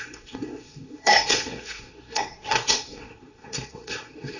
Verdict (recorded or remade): remade